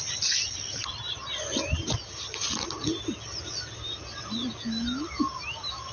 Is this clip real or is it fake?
real